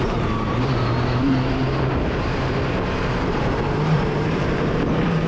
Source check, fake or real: fake